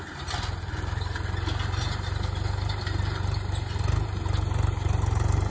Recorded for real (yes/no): yes